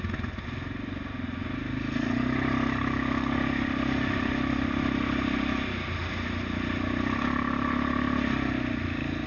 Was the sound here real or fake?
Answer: real